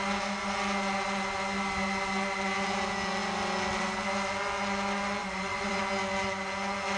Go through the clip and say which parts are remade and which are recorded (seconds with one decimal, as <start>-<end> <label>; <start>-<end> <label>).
0.0-5.2 recorded; 5.2-5.8 remade; 5.8-7.0 recorded